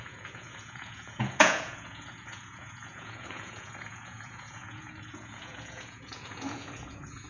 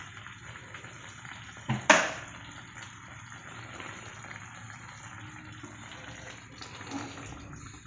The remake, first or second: first